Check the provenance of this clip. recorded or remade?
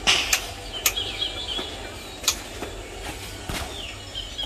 recorded